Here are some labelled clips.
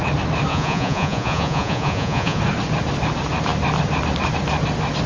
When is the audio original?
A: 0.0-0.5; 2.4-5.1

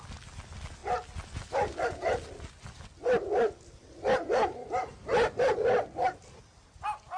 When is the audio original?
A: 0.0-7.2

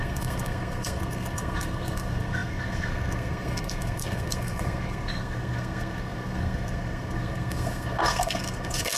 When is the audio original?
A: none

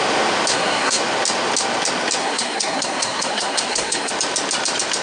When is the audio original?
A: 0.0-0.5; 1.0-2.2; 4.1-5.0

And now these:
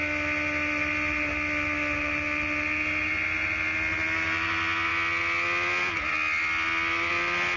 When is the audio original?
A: 0.0-7.6

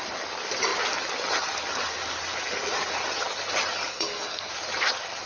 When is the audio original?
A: 0.0-3.9; 4.5-5.3

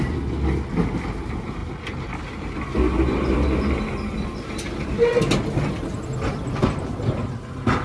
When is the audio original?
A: 0.0-7.8

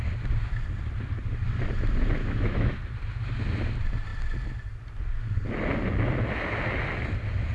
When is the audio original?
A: 0.0-2.2; 2.8-7.5